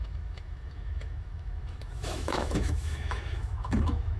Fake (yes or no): yes